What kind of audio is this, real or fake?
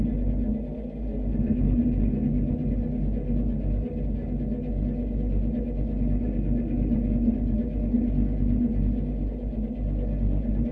real